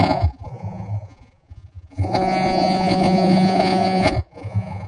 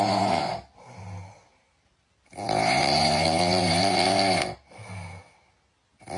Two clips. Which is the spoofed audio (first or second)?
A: first